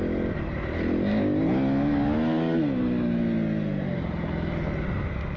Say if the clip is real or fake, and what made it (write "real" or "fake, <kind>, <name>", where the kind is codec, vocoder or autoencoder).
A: real